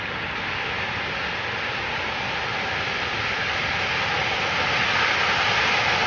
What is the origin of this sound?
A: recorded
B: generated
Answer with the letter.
A